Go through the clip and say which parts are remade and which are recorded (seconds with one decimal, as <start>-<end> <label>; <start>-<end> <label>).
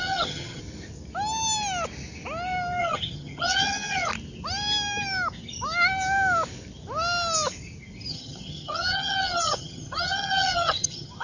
0.0-0.6 remade; 0.6-2.8 recorded; 2.8-4.1 remade; 4.1-8.1 recorded; 8.1-11.2 remade